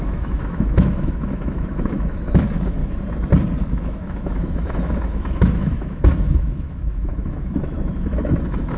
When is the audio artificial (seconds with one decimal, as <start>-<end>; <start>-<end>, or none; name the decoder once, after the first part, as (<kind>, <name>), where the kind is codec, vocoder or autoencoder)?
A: 0.0-2.8 (autoencoder, DAC-VAE); 3.6-8.8